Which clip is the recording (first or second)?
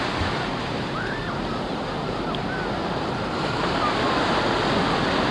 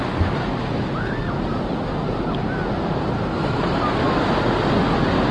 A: second